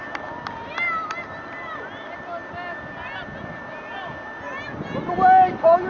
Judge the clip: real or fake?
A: real